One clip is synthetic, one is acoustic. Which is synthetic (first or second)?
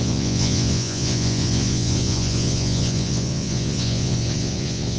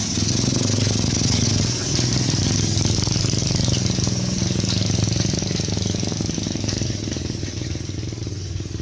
first